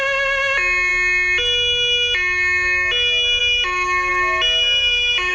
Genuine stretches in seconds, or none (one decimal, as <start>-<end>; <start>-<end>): 0.0-5.3